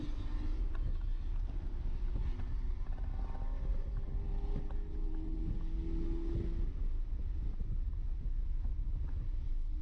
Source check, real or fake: real